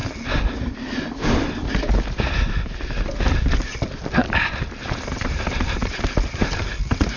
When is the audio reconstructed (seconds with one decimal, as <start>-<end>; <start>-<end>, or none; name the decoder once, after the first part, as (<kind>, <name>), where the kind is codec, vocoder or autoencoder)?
4.2-7.2 (vocoder, BigVGAN v2)